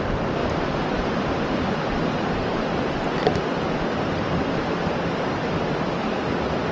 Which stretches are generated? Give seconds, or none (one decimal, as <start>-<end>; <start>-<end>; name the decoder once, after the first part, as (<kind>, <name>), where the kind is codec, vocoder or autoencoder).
0.0-2.7 (vocoder, BigVGAN v2); 6.3-6.7